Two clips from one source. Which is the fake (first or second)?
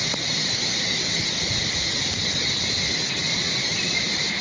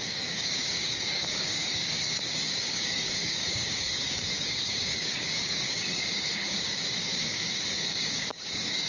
second